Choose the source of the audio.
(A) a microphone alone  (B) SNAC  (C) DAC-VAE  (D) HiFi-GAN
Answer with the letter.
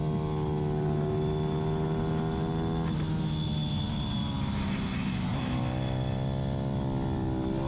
A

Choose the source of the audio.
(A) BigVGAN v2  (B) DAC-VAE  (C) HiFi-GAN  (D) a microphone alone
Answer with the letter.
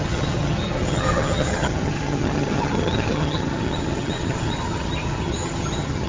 C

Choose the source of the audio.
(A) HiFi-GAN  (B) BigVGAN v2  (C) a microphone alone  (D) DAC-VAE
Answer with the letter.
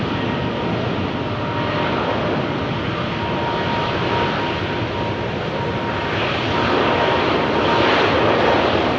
C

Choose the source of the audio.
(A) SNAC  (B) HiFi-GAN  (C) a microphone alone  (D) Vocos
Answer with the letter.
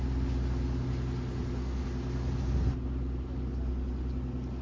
C